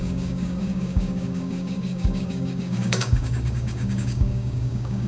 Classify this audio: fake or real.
fake